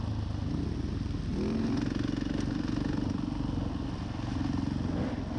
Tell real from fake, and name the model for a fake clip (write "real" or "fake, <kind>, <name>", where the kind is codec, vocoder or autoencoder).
real